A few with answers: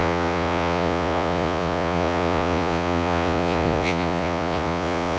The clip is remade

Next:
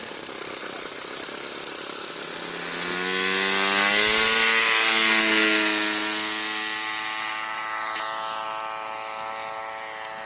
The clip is recorded